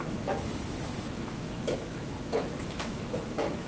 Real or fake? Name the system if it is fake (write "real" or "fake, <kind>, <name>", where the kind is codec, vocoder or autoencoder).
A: fake, autoencoder, DAC-VAE